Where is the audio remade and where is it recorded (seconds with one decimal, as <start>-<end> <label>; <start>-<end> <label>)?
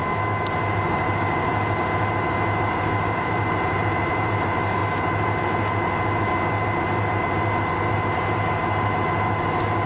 0.0-0.7 recorded; 0.7-1.5 remade; 1.5-2.7 recorded; 2.7-4.8 remade; 4.8-9.9 recorded